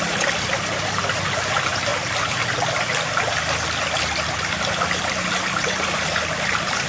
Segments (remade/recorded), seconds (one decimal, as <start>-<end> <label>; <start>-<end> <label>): 0.0-6.9 recorded